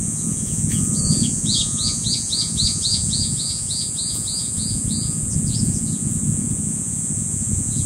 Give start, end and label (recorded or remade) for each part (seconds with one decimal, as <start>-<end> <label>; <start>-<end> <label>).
0.0-7.9 remade